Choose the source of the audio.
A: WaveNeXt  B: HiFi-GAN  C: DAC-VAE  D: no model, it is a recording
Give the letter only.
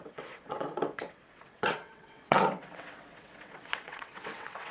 A